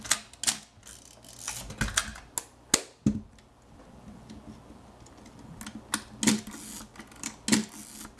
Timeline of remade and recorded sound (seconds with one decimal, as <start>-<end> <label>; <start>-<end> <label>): 0.0-8.2 recorded